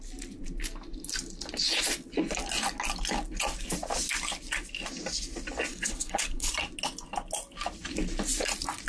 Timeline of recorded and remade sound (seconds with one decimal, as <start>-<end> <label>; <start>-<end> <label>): 0.0-5.7 recorded; 5.7-6.5 remade; 6.5-8.9 recorded